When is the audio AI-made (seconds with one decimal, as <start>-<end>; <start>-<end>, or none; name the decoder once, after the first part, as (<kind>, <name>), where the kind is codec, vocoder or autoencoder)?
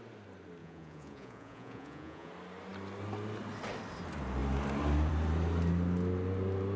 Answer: 0.6-2.3 (vocoder, Vocos)